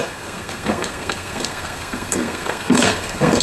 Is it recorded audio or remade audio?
remade